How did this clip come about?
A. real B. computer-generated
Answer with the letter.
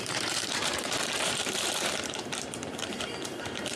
B